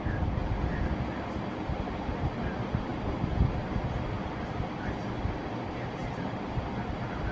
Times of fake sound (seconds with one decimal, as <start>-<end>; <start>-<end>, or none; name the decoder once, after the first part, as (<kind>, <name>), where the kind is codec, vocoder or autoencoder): none